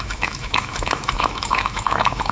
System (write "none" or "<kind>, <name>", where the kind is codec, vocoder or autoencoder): autoencoder, DAC-VAE